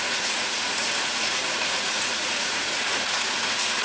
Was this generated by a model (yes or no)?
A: yes